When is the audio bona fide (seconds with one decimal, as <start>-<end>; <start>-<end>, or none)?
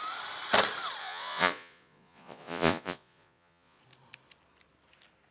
0.0-1.0; 3.8-5.3